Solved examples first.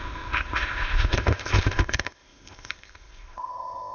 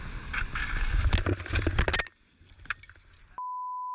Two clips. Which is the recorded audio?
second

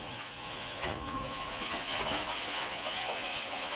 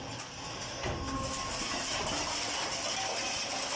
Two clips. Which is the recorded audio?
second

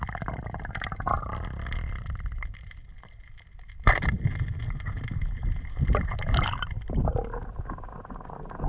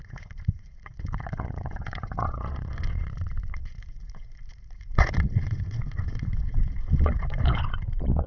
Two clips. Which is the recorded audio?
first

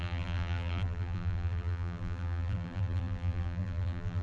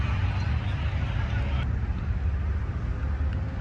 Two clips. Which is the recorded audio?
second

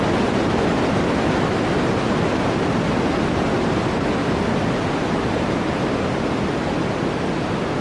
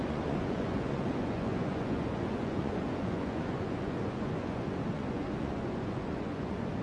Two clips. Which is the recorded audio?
first